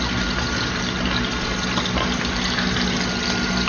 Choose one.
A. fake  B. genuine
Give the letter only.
B